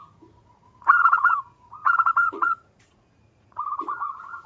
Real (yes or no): no